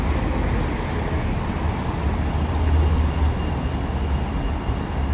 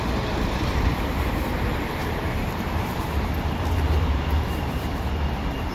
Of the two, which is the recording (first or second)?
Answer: first